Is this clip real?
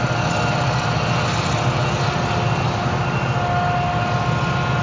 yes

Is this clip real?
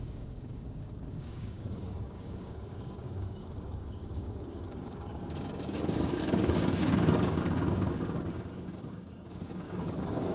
no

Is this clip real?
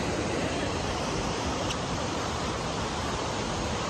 no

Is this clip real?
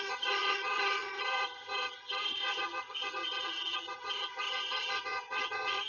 no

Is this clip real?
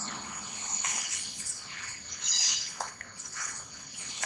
no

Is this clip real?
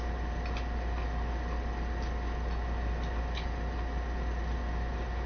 yes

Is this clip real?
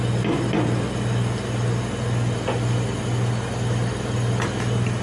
yes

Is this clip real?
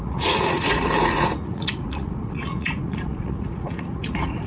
no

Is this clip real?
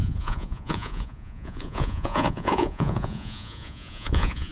no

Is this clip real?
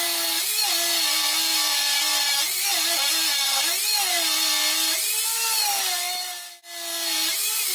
yes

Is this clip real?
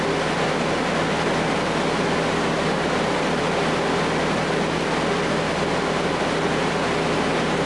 yes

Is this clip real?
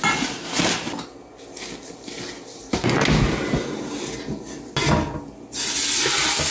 yes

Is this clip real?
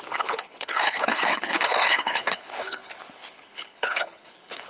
no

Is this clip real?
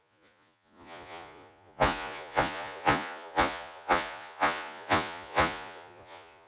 no